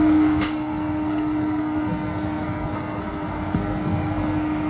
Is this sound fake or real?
fake